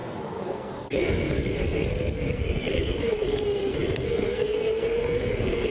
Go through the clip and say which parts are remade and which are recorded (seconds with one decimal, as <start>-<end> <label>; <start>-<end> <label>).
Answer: 0.0-5.7 remade